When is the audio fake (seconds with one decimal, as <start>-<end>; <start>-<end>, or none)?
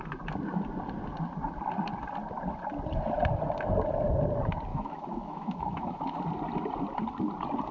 4.7-6.2